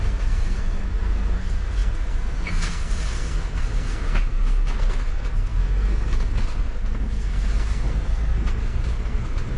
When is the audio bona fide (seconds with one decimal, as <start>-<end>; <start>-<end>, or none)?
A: none